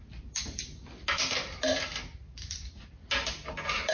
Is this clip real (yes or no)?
yes